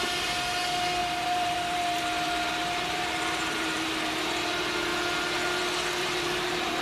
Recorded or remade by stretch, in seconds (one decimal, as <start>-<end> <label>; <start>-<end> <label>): 0.0-1.0 recorded; 1.0-4.4 remade; 4.4-6.0 recorded; 6.0-6.8 remade